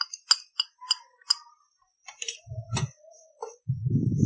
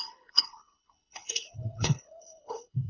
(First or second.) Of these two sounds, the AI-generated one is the second